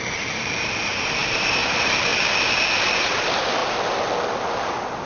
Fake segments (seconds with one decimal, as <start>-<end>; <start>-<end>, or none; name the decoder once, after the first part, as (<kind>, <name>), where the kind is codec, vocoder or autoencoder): 0.0-2.1 (vocoder, BigVGAN v2); 3.0-5.0